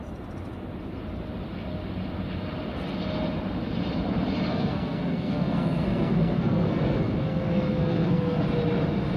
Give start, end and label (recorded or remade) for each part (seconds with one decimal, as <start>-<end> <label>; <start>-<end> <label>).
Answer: 0.0-4.5 recorded; 4.5-8.4 remade; 8.4-9.2 recorded